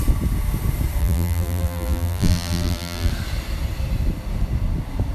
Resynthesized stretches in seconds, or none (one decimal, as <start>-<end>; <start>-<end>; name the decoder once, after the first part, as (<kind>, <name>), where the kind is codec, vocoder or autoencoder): 1.0-3.1 (vocoder, BigVGAN v2)

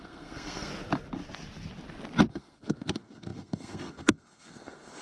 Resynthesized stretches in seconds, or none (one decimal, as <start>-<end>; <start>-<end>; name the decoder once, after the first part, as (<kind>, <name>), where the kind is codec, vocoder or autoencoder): 0.0-0.7 (codec, SNAC); 2.3-5.0

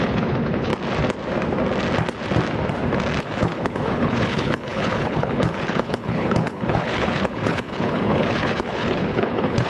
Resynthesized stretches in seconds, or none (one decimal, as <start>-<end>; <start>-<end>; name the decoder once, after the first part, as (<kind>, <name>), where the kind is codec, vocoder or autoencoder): 0.0-0.7 (codec, HILCodec); 3.2-9.7

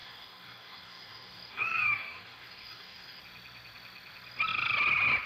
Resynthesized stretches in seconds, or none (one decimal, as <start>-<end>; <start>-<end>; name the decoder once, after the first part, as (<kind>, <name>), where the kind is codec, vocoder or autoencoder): 0.0-3.2 (codec, DAC)

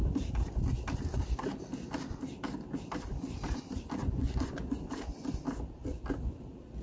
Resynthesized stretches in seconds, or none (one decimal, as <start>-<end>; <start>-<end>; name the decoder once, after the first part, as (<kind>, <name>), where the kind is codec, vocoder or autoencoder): 4.0-4.8 (vocoder, Vocos)

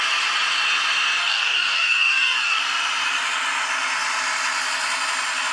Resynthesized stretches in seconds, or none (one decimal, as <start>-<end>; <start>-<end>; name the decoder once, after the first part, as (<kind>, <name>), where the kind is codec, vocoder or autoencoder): 1.2-2.6 (codec, DAC)

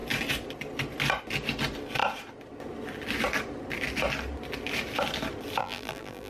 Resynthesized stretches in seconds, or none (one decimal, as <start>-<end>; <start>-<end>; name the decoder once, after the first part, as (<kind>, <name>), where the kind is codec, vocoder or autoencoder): 5.6-6.3 (vocoder, BigVGAN v2)

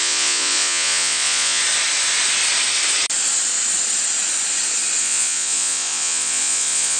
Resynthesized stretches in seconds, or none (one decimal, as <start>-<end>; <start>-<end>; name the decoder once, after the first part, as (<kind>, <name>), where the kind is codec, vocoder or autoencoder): 0.0-1.6 (vocoder, Vocos); 5.0-7.0